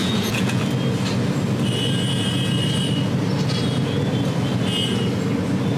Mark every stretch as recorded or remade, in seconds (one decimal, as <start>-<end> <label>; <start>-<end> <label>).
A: 0.0-0.6 remade; 0.6-5.8 recorded